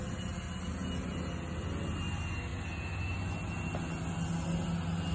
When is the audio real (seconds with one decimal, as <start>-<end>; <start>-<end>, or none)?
0.0-5.1